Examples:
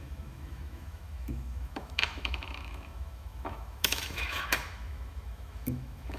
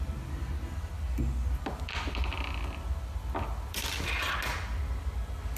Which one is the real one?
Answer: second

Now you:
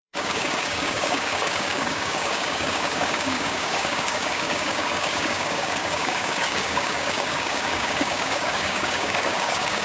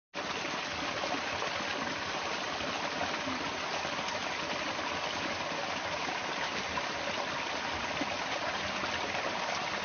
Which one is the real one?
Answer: second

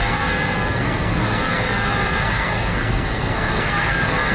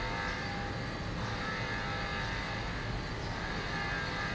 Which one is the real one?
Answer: second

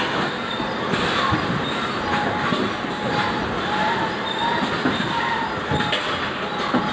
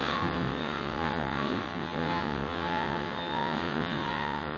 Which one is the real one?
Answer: first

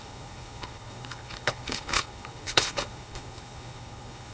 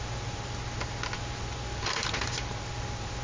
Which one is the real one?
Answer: second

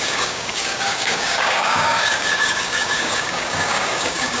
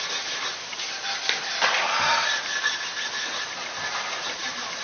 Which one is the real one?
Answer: second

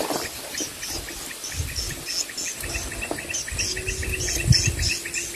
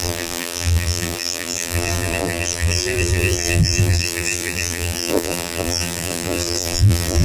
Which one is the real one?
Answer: first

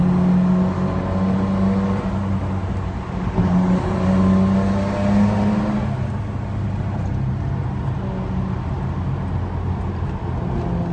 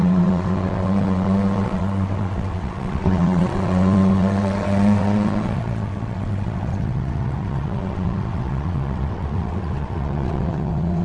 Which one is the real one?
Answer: first